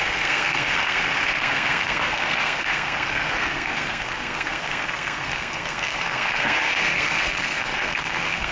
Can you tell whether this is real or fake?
fake